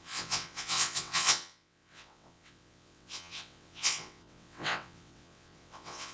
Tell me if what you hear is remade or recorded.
remade